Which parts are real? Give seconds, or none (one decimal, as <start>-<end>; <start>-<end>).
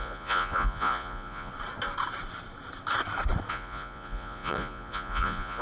1.5-3.5